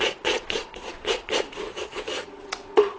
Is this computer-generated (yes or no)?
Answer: yes